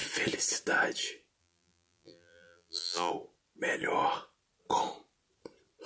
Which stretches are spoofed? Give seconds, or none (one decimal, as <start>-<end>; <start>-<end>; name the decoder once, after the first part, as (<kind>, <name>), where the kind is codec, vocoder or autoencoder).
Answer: 1.4-3.1 (vocoder, BigVGAN v2)